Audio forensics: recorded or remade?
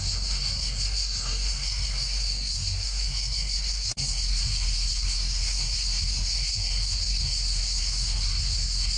remade